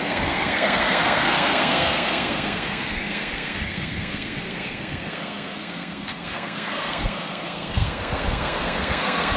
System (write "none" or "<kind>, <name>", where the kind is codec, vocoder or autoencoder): codec, SNAC